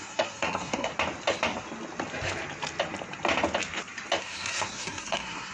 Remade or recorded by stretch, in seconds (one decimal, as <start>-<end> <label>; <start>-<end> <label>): 0.0-0.9 remade; 0.9-4.2 recorded; 4.2-5.5 remade